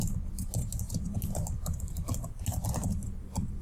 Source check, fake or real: real